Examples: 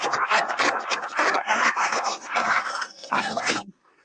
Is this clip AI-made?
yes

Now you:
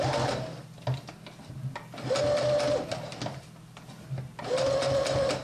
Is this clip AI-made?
no